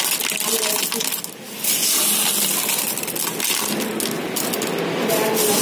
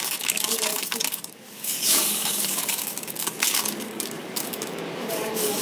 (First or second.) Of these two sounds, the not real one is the second